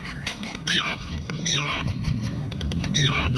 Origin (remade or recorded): remade